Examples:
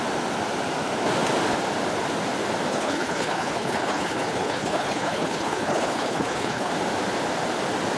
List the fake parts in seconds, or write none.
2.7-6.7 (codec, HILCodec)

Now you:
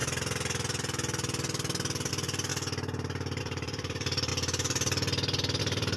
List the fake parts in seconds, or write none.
2.1-2.5 (vocoder, BigVGAN v2); 3.4-4.3; 5.6-6.0